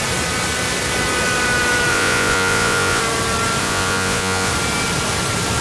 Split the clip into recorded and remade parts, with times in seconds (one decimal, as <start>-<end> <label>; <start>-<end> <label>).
0.0-1.9 recorded; 1.9-3.0 remade; 3.0-3.6 recorded; 3.6-4.5 remade; 4.5-5.6 recorded